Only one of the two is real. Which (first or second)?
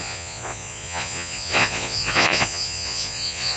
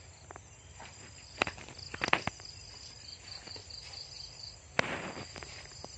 second